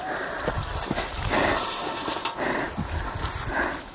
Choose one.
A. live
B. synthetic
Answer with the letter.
A